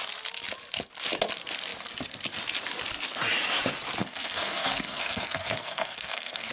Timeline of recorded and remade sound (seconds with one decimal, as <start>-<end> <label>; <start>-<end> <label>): 0.0-4.0 recorded; 4.0-6.5 remade